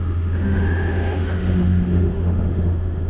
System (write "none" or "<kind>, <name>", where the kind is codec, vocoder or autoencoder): autoencoder, DAC-VAE